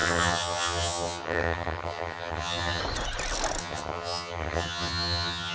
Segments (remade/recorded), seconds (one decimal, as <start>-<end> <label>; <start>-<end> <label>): 0.0-2.8 remade; 2.8-3.6 recorded; 3.6-5.5 remade